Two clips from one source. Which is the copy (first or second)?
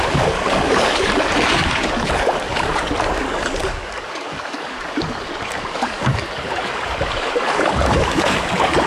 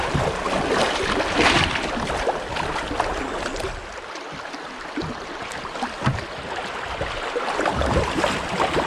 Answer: first